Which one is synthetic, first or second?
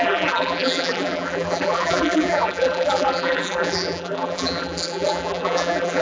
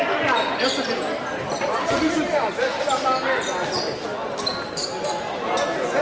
first